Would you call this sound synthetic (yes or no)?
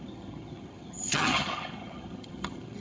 yes